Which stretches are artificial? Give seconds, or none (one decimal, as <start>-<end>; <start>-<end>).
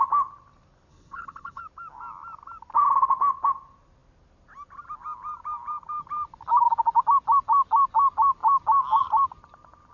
0.9-1.6